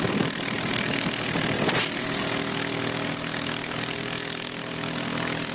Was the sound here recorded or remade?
recorded